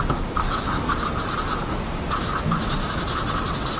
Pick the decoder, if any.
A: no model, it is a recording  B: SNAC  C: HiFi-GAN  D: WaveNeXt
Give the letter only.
A